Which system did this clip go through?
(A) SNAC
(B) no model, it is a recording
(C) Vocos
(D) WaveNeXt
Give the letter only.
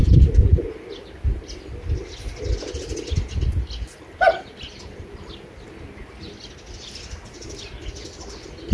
B